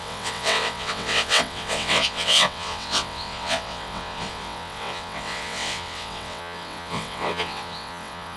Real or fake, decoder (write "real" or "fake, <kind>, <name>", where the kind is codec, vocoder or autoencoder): fake, vocoder, WaveNeXt